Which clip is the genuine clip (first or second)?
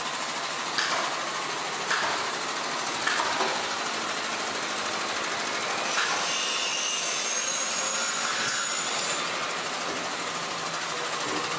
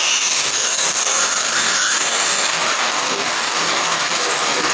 first